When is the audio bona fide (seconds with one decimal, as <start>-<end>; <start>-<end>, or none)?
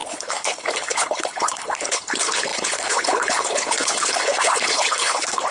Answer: none